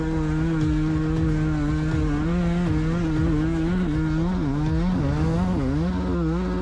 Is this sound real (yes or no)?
yes